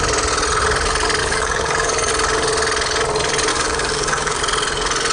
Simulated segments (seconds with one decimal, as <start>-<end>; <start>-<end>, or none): 1.2-2.1; 3.5-4.4

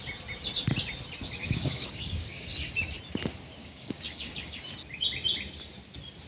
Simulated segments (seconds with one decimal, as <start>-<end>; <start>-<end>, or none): 1.4-2.7; 3.6-4.6